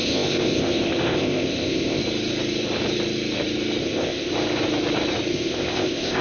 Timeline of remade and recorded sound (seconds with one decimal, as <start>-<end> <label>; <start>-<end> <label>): 0.0-2.0 remade; 2.0-3.8 recorded; 3.8-4.3 remade; 4.3-5.3 recorded; 5.3-6.2 remade